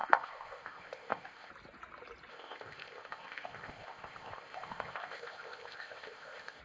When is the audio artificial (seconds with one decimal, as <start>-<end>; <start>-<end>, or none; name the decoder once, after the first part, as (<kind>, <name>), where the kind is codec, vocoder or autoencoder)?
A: 0.0-1.5 (codec, ZipCodec); 2.3-6.6